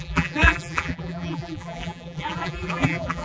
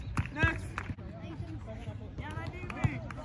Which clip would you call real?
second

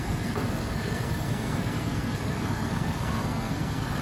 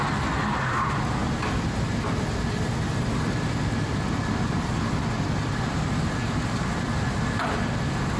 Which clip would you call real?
second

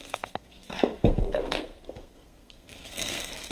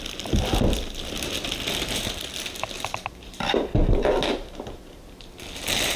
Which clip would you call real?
second